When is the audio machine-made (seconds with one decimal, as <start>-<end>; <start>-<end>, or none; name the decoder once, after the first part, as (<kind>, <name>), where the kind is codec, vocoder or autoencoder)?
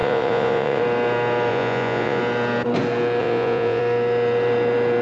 0.0-0.8 (vocoder, Vocos); 1.5-2.2; 3.2-3.8